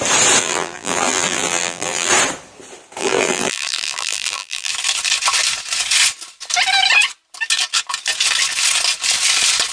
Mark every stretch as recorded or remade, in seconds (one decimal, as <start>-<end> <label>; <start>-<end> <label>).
0.0-0.4 recorded; 0.4-2.1 remade; 2.1-3.0 recorded; 3.0-4.7 remade; 4.7-9.7 recorded